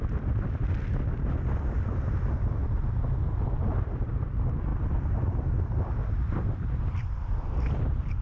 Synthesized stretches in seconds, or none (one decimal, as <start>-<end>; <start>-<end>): 0.0-2.6; 3.5-8.2